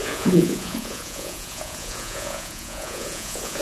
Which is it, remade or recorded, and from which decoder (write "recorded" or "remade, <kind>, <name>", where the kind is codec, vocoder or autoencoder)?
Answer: remade, vocoder, Vocos